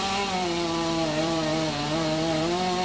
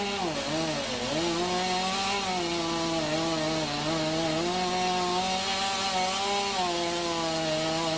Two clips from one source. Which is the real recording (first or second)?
second